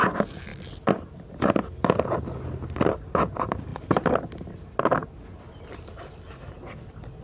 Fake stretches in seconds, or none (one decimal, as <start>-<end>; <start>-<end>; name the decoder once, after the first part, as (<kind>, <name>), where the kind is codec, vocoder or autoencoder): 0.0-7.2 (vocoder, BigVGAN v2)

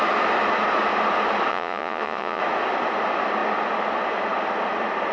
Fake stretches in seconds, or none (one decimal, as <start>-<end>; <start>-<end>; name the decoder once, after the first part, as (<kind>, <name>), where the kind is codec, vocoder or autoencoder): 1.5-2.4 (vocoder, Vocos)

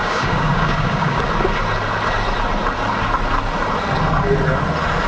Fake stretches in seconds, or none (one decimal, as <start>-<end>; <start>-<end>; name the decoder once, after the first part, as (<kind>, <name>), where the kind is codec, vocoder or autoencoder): 0.0-1.2 (codec, DAC)

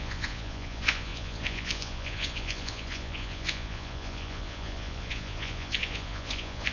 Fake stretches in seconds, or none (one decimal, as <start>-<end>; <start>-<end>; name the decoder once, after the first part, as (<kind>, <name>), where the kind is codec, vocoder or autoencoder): 0.0-6.7 (vocoder, Vocos)

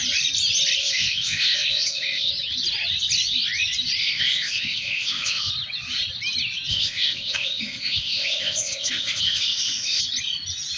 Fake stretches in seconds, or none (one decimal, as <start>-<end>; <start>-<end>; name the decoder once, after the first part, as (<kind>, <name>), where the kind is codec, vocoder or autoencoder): 0.8-2.3 (codec, ZipCodec); 4.0-5.5; 6.7-10.0

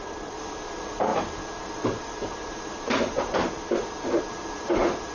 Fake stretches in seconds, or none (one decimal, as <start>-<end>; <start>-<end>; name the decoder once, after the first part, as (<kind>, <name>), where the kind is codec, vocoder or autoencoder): 0.0-5.1 (vocoder, BigVGAN v2)

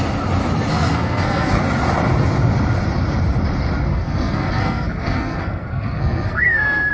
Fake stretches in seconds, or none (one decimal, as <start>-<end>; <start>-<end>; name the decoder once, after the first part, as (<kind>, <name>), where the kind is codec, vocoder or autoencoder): 0.7-1.6 (codec, SNAC); 3.9-6.9